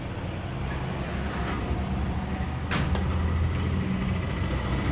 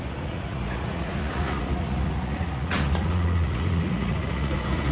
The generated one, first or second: second